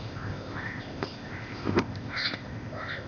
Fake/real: fake